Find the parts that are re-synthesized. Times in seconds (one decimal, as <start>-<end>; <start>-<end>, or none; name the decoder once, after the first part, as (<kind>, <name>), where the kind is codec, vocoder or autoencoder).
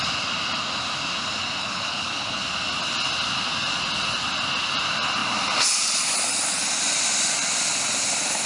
1.6-2.4 (codec, HILCodec)